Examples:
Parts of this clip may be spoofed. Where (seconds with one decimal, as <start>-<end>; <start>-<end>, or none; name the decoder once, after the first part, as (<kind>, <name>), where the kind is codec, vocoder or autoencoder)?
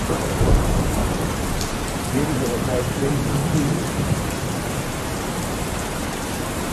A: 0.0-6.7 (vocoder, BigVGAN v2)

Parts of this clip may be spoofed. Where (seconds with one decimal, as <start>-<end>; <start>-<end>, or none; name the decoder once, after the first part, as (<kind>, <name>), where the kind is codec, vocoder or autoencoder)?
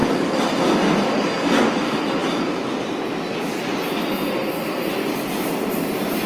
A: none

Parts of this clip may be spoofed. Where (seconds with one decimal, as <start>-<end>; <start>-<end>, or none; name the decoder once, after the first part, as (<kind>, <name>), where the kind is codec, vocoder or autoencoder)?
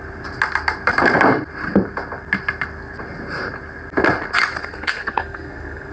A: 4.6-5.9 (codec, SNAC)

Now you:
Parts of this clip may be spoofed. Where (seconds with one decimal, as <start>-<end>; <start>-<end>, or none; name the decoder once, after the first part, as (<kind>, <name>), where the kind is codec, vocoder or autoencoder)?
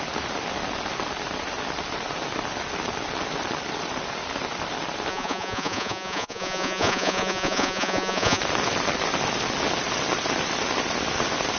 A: 5.1-8.4 (vocoder, Vocos)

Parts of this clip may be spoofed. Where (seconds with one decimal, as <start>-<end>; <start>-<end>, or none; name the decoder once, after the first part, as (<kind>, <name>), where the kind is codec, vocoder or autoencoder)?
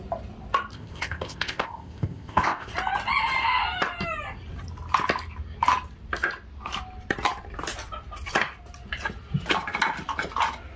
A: 0.7-2.7 (codec, ZipCodec)